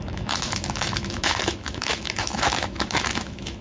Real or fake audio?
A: fake